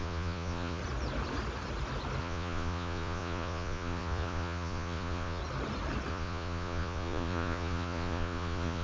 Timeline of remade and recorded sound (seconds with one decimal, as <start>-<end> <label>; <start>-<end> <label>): 0.0-0.8 remade; 0.8-2.2 recorded; 2.2-5.4 remade; 5.4-6.1 recorded; 6.1-8.8 remade